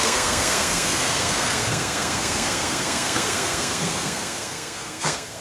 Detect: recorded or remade remade